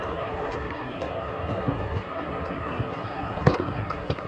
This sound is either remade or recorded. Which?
remade